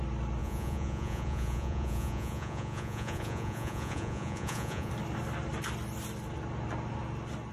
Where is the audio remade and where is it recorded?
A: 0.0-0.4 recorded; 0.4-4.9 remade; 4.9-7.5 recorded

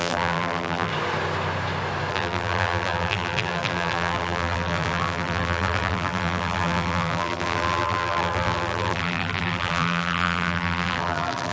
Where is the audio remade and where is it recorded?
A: 0.0-0.9 remade; 0.9-2.1 recorded; 2.1-11.5 remade

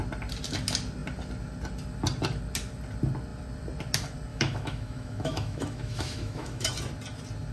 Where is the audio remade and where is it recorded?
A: 0.0-4.3 recorded; 4.3-6.7 remade; 6.7-7.5 recorded

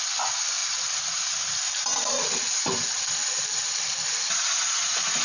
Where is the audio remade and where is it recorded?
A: 0.0-5.2 recorded

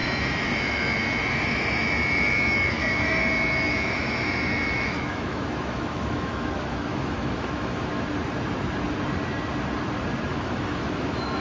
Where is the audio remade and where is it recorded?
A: 0.0-7.9 remade; 7.9-10.3 recorded; 10.3-11.4 remade